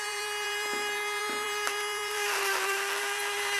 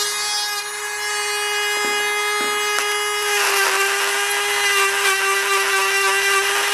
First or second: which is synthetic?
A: first